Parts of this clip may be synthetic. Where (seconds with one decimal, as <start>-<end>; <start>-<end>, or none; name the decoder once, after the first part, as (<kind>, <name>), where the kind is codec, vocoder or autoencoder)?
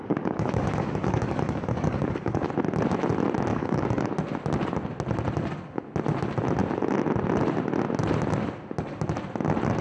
0.0-2.5 (codec, DAC); 3.5-4.1